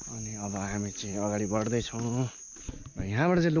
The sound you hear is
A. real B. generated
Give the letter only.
A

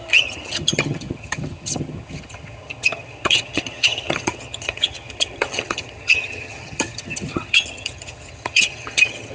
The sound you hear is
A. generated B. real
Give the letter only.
A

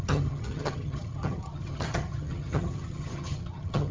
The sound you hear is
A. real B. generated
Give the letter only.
B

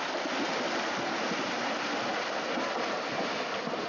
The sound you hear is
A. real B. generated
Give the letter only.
A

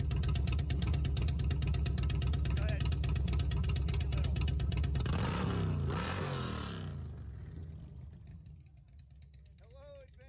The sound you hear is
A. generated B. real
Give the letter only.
B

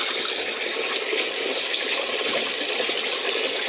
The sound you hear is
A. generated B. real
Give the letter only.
B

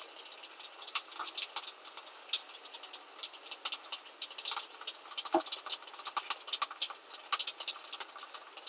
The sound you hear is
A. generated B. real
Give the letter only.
B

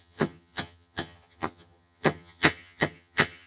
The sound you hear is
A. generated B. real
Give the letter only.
A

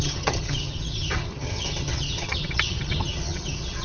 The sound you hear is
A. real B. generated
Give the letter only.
B